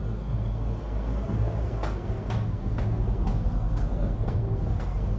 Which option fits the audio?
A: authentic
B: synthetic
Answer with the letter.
B